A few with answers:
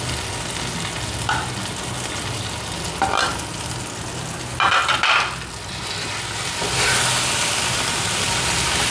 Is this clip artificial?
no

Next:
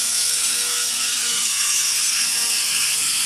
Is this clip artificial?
yes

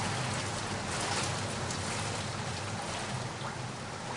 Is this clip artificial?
no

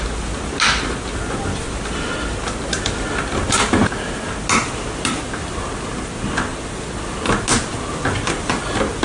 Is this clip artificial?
no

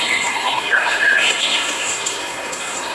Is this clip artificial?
yes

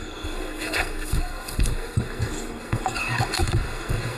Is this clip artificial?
yes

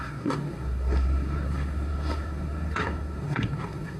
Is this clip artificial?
yes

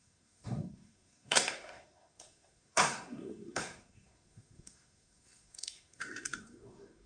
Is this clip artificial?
yes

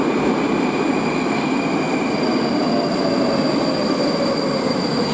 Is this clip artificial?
no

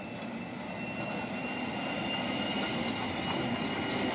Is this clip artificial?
no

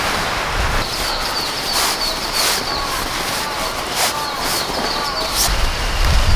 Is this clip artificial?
no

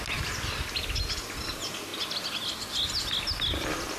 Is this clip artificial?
no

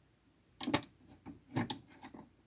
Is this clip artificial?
no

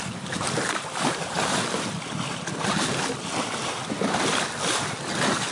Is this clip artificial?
no